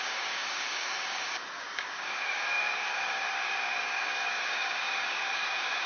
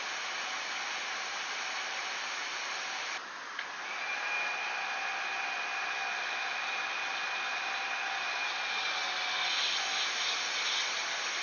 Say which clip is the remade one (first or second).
first